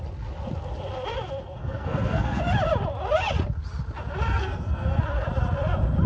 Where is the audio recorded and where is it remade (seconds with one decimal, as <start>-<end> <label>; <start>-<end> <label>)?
0.0-1.6 recorded; 1.6-2.4 remade; 2.4-4.3 recorded; 4.3-5.0 remade; 5.0-6.1 recorded